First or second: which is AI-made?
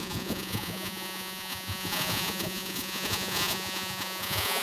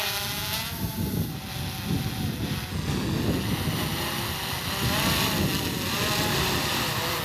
first